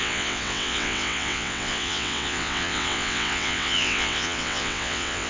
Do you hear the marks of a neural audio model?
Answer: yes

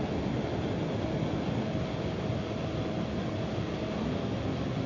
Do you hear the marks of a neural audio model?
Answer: no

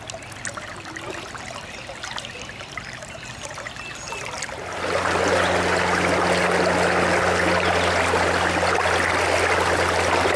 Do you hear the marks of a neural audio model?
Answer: no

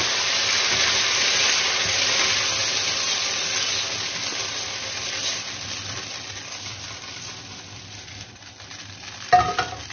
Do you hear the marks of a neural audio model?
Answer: no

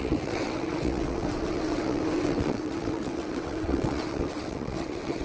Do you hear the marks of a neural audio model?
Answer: yes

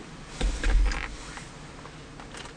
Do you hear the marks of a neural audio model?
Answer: no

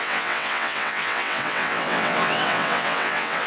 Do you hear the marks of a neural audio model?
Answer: yes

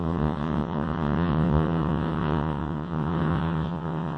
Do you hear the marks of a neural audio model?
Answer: yes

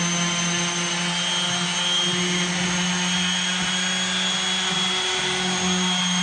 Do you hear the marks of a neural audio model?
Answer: no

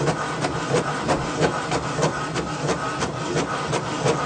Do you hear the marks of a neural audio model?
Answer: no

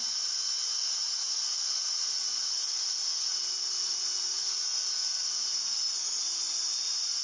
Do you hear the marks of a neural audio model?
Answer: no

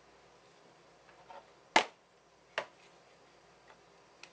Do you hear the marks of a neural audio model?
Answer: no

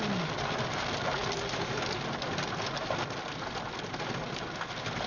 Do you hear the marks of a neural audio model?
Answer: no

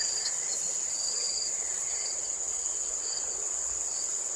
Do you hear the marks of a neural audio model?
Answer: yes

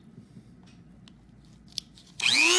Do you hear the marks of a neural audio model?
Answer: no